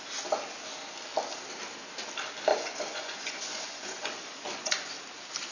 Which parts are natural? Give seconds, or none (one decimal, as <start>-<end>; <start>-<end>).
0.0-2.5; 4.9-5.5